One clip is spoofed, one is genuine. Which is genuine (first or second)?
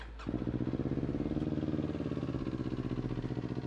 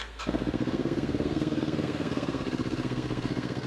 first